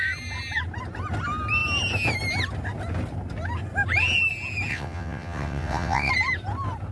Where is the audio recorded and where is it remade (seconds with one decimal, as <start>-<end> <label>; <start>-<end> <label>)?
0.0-4.7 recorded; 4.7-6.1 remade; 6.1-6.9 recorded